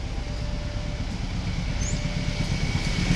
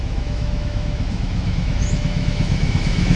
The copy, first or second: second